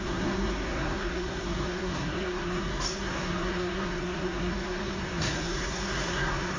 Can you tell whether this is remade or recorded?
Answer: remade